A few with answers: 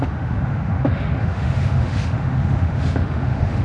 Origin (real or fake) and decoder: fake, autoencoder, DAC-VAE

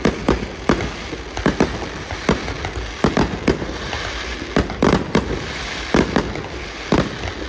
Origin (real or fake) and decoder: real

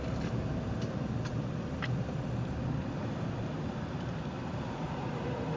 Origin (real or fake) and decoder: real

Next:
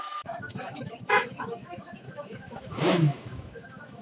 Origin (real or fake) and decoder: fake, autoencoder, DAC-VAE